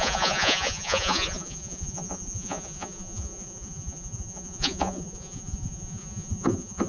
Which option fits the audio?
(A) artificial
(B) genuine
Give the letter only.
A